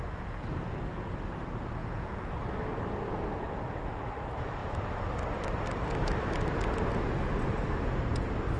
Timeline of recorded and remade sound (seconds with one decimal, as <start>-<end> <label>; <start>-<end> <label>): 0.0-1.8 recorded; 1.8-2.3 remade; 2.3-8.6 recorded